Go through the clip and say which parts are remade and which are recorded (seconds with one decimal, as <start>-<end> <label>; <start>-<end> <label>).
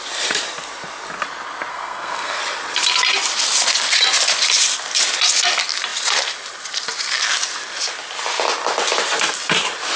0.0-1.7 recorded; 1.7-2.4 remade; 2.4-10.0 recorded